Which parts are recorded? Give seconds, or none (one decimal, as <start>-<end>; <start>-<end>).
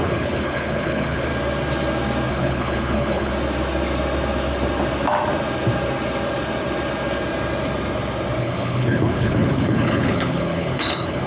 1.3-2.3; 3.3-8.4